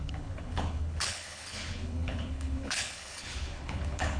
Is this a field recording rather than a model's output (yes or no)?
no